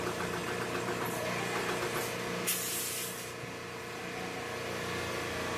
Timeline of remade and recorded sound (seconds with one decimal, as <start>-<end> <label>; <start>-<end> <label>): 0.0-5.6 recorded